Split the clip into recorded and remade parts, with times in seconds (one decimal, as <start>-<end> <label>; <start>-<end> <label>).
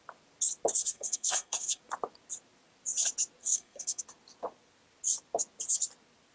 0.0-0.8 recorded; 0.8-1.8 remade; 1.8-3.4 recorded; 3.4-4.0 remade; 4.0-6.3 recorded